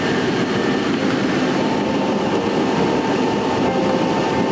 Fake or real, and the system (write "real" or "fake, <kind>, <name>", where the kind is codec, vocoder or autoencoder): fake, vocoder, BigVGAN v2